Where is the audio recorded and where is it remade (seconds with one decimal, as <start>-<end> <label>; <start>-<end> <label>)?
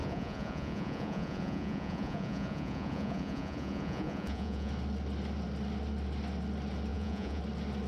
0.0-4.7 remade; 4.7-6.9 recorded; 6.9-7.4 remade; 7.4-7.9 recorded